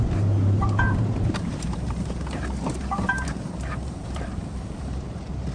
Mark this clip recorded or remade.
remade